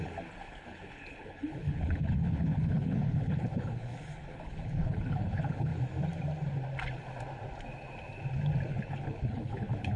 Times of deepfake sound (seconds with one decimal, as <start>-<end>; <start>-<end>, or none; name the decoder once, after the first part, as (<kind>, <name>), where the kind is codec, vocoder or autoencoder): 0.0-5.7 (codec, HILCodec); 8.7-10.0

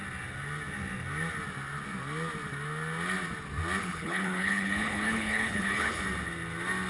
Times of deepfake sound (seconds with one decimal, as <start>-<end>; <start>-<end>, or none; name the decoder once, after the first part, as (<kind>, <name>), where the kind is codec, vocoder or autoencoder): 3.8-6.0 (codec, HILCodec)

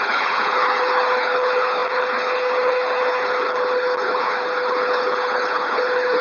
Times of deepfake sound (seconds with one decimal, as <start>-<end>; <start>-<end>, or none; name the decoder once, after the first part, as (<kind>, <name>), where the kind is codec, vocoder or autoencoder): 0.0-6.2 (codec, HILCodec)

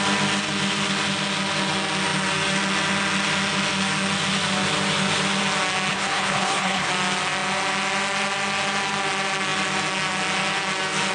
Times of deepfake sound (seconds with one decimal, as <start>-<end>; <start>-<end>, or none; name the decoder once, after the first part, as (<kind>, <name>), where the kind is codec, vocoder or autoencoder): 5.9-6.9 (codec, HILCodec)